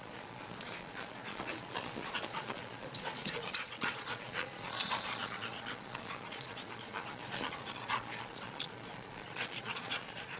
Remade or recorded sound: remade